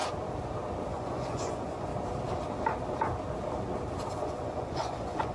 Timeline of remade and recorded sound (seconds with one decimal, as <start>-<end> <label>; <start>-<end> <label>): 0.0-0.9 recorded; 0.9-1.9 remade; 1.9-4.1 recorded; 4.1-5.3 remade